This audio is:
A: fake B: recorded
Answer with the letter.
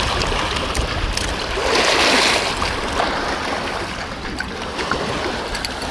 B